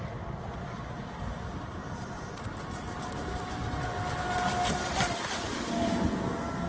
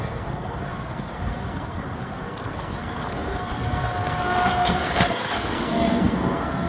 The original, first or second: first